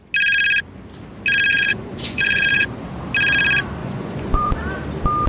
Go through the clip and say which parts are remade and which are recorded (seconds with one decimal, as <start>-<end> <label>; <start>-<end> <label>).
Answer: 0.0-1.5 recorded; 1.5-2.7 remade; 2.7-3.8 recorded; 3.8-4.5 remade; 4.5-5.3 recorded